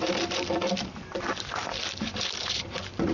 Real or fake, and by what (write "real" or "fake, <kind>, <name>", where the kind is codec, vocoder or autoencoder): real